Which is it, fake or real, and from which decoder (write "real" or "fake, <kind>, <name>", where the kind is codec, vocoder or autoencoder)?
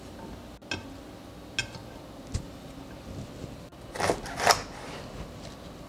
real